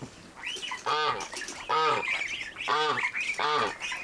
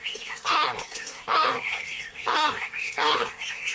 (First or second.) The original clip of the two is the first